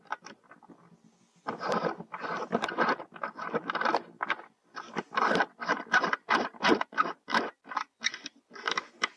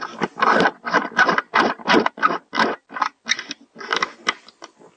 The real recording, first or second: second